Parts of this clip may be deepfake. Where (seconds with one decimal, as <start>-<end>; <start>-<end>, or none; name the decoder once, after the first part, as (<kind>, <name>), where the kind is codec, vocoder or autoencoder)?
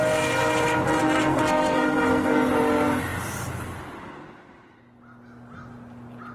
1.0-2.5 (codec, SNAC)